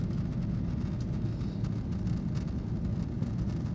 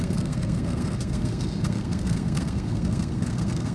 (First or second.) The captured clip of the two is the first